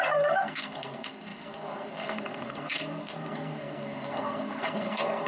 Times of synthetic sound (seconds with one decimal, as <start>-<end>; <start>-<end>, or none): 0.0-5.3